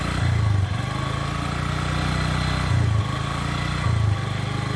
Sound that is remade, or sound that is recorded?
recorded